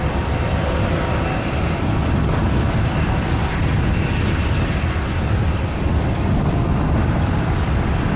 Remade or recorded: recorded